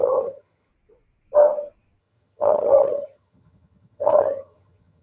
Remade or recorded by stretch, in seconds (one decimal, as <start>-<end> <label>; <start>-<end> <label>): 0.0-0.7 remade; 0.7-2.0 recorded; 2.0-5.0 remade